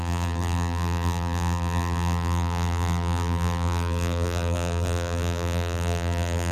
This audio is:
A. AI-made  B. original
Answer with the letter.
A